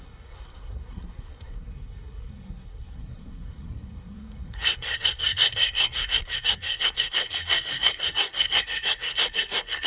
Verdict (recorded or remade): remade